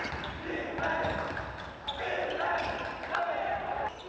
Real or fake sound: real